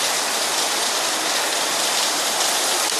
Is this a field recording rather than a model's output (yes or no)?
no